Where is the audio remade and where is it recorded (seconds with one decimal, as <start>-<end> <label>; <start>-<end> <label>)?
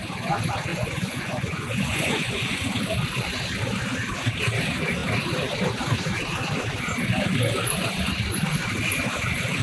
0.0-0.7 recorded; 0.7-2.7 remade; 2.7-9.6 recorded